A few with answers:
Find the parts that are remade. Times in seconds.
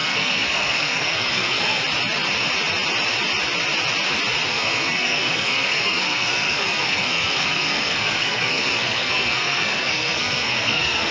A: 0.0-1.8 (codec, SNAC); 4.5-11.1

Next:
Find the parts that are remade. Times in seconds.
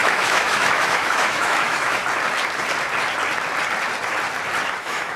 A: 0.0-2.0 (autoencoder, DAC-VAE); 4.8-5.2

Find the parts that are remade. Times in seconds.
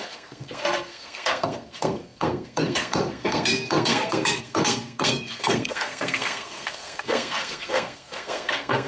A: 0.0-8.9 (codec, SNAC)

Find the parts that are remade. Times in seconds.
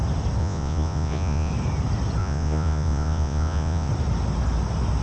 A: 0.4-1.5 (vocoder, Vocos); 2.2-3.9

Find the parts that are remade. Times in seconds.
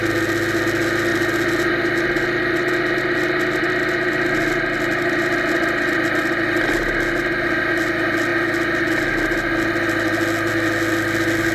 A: none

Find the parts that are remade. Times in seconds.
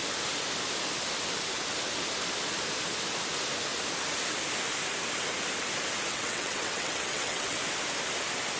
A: 6.1-7.6 (vocoder, WaveNeXt)